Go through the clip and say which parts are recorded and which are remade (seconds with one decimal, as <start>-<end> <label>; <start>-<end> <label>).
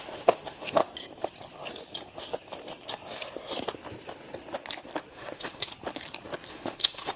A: 0.0-0.8 remade; 0.8-5.1 recorded; 5.1-5.7 remade; 5.7-6.5 recorded; 6.5-7.2 remade